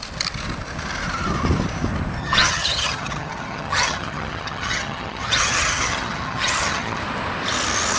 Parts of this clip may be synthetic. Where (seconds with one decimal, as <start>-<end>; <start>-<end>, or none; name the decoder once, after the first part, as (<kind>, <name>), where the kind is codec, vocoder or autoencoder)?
2.2-7.0 (vocoder, HiFi-GAN)